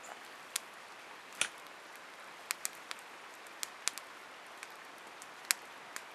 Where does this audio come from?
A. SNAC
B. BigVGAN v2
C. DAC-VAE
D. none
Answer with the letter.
D